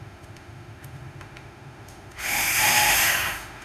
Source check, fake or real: fake